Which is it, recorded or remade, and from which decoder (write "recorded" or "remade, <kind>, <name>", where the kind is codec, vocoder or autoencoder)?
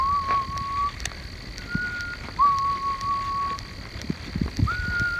recorded